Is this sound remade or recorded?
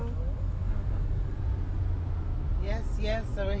recorded